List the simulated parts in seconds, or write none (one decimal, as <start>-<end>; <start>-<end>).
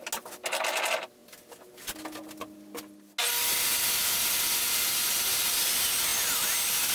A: none